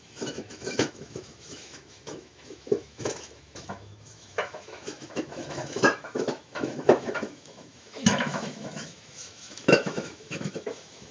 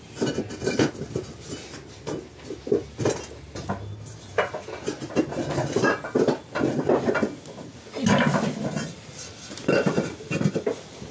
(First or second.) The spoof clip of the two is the first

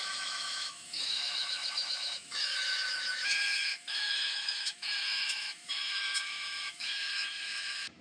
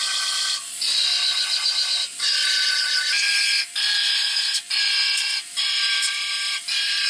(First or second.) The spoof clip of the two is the first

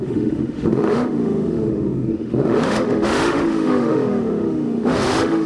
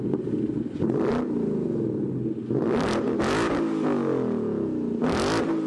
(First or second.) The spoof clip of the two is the first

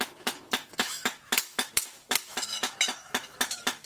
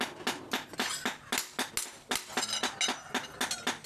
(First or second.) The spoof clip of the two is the first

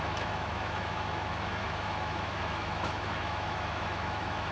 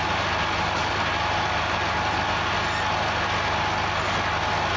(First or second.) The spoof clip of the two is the first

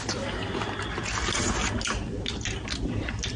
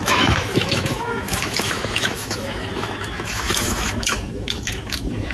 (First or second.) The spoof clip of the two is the second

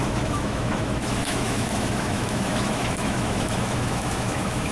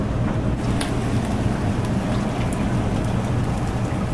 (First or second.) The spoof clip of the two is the first